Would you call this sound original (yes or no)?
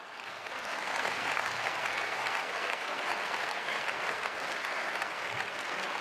no